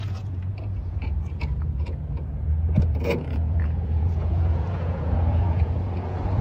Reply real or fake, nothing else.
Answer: fake